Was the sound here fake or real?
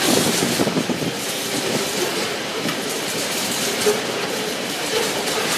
fake